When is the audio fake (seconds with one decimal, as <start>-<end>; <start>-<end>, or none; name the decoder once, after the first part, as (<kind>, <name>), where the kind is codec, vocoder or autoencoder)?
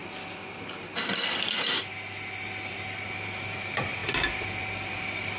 none